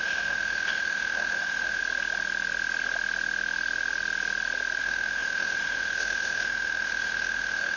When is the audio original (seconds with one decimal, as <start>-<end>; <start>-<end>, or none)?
1.8-4.8